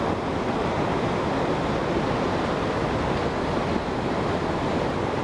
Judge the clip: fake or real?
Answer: real